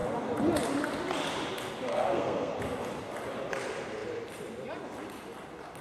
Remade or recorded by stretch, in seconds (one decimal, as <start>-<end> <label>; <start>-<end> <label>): 0.0-1.9 recorded; 1.9-2.5 remade; 2.5-5.8 recorded